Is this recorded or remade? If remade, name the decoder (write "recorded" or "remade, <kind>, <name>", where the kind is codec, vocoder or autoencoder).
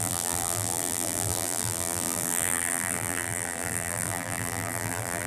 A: remade, vocoder, BigVGAN v2